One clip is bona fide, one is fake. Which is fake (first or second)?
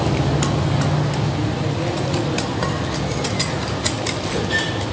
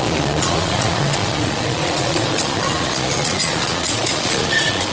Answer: second